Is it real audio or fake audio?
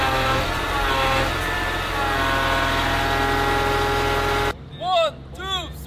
real